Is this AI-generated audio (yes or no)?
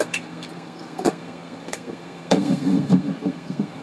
yes